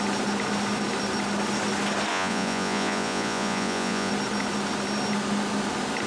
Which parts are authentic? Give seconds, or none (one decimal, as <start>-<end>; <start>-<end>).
0.0-2.1; 4.1-6.1